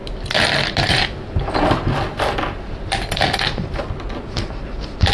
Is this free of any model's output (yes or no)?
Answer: yes